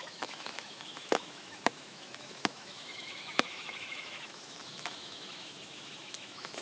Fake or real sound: fake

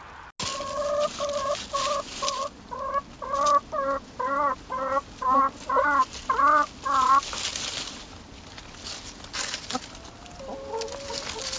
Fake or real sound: real